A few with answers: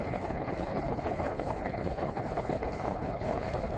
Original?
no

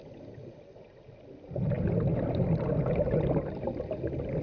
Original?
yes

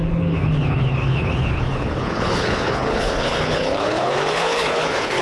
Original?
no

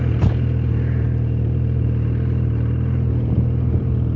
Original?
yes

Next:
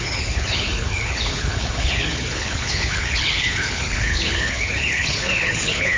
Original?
no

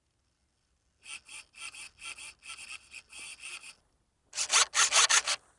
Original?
yes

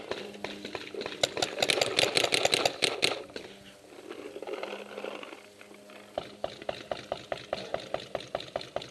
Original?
yes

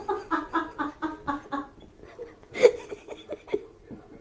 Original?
yes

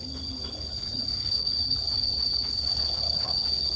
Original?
no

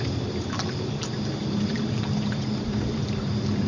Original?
yes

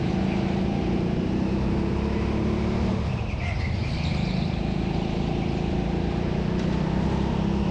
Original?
yes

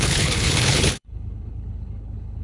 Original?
no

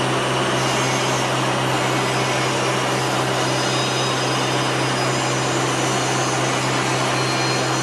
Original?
yes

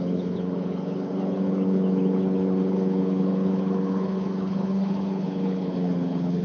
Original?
no